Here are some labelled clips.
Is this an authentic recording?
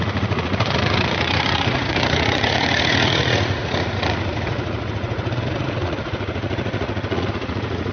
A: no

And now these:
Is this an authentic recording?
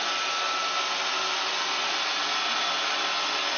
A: yes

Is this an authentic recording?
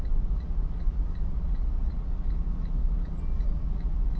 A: no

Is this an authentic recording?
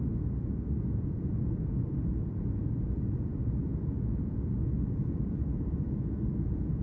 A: no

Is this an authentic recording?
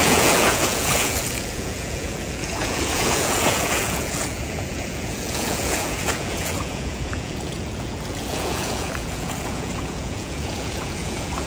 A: no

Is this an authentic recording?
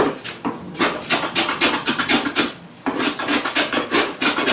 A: yes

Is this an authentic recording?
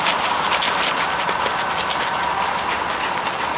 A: yes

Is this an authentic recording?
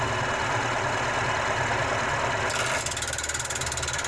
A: yes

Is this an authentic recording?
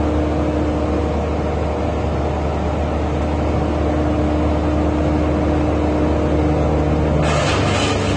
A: yes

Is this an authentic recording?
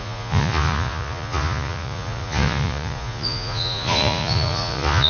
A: no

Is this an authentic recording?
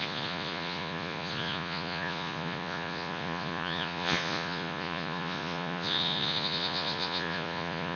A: no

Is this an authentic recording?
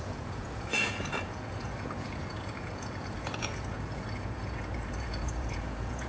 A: no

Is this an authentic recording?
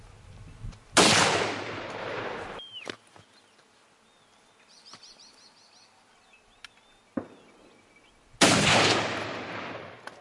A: yes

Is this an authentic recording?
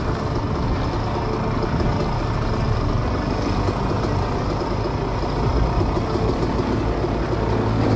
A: yes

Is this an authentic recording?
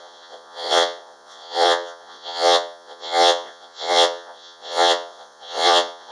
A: no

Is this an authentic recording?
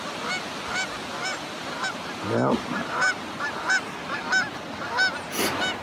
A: yes